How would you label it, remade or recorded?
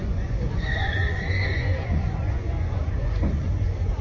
remade